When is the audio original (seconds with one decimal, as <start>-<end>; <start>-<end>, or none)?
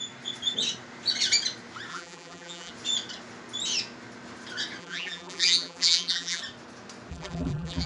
0.0-1.9; 2.7-4.8; 6.4-7.1